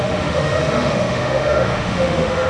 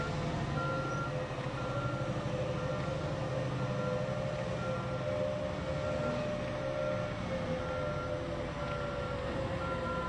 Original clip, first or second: second